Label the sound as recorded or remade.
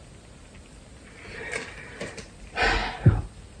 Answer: recorded